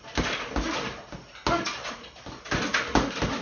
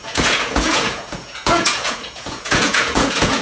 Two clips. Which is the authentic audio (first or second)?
first